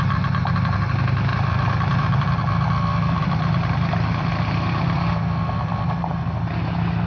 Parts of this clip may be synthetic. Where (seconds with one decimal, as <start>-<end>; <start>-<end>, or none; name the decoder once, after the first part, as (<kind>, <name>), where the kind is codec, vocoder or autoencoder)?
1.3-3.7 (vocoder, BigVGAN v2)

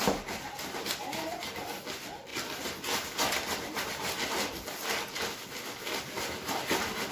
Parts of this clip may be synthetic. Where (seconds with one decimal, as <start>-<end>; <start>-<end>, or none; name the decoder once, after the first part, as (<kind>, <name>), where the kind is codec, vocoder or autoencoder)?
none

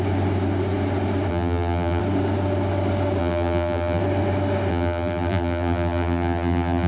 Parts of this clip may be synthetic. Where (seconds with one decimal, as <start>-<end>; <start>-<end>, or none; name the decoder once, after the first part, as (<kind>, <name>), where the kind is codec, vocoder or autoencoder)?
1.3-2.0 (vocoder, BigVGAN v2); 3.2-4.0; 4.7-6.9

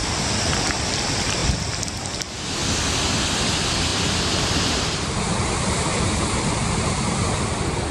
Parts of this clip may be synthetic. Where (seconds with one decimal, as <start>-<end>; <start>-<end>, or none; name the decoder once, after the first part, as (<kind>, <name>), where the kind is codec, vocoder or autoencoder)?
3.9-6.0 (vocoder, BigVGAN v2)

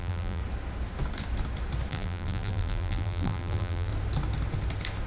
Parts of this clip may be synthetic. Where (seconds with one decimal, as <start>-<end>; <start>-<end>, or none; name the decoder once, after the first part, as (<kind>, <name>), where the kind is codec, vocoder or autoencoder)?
0.0-0.4 (vocoder, BigVGAN v2); 1.9-3.9

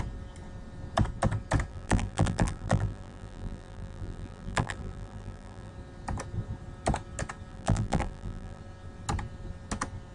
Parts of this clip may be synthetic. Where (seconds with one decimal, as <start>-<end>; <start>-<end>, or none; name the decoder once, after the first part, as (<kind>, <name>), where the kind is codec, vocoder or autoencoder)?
1.7-5.7 (vocoder, BigVGAN v2); 7.5-8.6